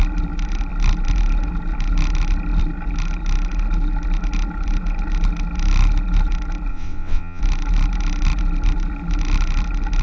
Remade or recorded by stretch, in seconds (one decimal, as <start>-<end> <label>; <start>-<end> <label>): 0.0-6.7 recorded; 6.7-7.4 remade; 7.4-10.0 recorded